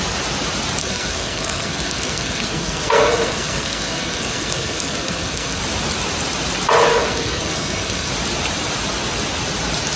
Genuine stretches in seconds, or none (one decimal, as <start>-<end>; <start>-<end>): 0.0-0.8; 5.6-6.9; 8.1-10.0